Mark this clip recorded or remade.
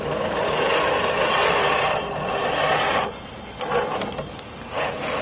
recorded